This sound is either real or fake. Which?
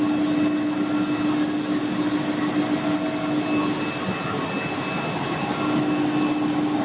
real